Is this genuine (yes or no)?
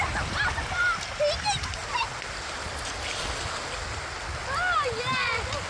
yes